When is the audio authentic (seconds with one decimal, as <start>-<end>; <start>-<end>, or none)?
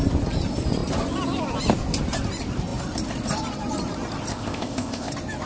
0.0-4.3; 5.1-5.5